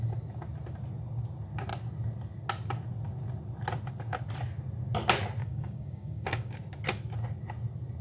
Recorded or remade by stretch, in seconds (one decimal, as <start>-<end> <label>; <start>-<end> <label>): 0.0-5.4 recorded; 5.4-6.5 remade; 6.5-8.0 recorded